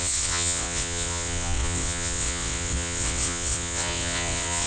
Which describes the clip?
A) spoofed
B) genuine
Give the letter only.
A